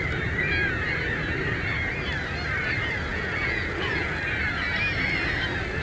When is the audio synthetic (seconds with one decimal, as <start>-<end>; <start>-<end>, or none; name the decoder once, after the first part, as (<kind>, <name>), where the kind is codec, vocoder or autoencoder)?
3.1-4.2 (vocoder, Vocos)